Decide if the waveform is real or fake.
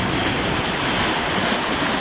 real